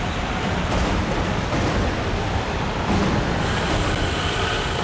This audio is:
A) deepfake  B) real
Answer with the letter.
A